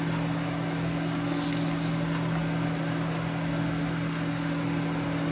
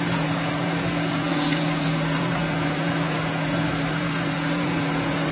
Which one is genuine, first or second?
first